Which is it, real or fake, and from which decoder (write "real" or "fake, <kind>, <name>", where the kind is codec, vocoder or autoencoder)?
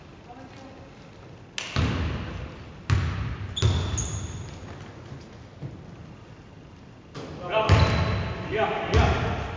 real